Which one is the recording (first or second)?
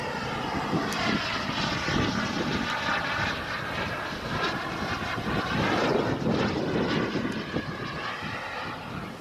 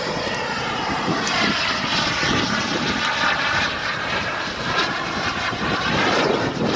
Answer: first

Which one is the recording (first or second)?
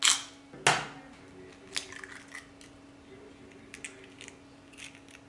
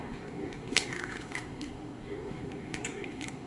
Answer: first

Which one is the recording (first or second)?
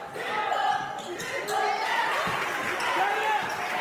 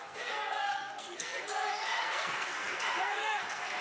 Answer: first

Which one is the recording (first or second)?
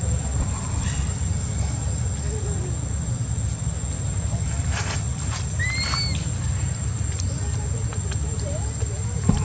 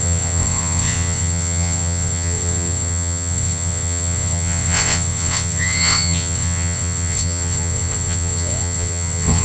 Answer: first